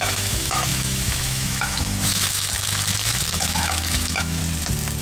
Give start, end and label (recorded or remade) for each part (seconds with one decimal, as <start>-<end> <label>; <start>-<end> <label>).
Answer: 0.0-4.4 remade; 4.4-5.0 recorded